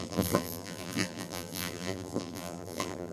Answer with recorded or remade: remade